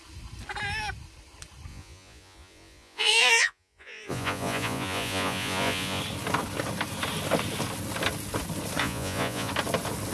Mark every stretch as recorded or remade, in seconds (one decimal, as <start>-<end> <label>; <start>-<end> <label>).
0.0-1.7 recorded; 1.7-6.0 remade; 6.0-8.8 recorded; 8.8-9.5 remade; 9.5-10.1 recorded